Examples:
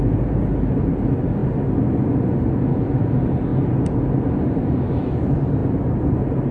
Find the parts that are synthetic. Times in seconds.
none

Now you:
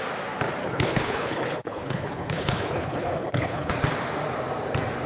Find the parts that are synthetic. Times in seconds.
0.6-3.7 (codec, HILCodec)

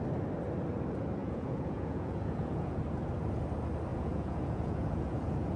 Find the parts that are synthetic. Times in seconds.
1.2-2.8 (vocoder, Vocos); 3.9-5.6

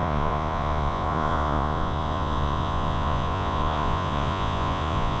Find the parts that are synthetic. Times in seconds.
0.0-5.2 (vocoder, Vocos)